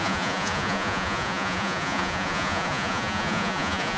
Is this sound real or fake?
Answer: fake